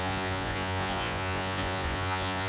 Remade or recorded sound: remade